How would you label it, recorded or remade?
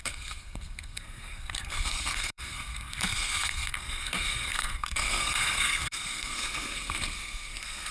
remade